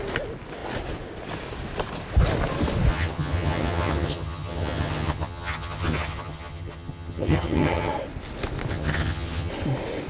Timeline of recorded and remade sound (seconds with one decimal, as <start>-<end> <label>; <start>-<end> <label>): 0.0-2.9 recorded; 2.9-7.9 remade; 7.9-8.7 recorded; 8.7-9.5 remade; 9.5-10.1 recorded